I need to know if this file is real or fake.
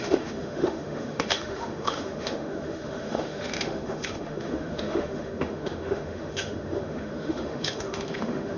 fake